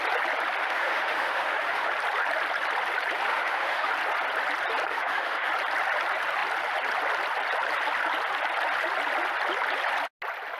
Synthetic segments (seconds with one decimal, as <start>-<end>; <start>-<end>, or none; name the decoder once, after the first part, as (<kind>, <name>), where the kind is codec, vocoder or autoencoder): 0.6-1.9 (autoencoder, DAC-VAE); 3.3-3.9; 4.9-5.5